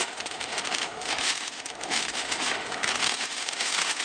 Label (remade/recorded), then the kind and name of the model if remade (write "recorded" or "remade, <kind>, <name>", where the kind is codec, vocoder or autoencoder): remade, autoencoder, DAC-VAE